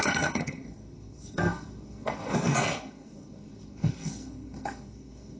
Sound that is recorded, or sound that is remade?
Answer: remade